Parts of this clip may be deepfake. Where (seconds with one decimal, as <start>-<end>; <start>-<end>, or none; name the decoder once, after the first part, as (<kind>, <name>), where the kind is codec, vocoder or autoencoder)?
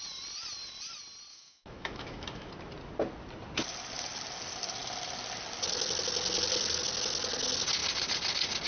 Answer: 1.3-2.5 (autoencoder, DAC-VAE)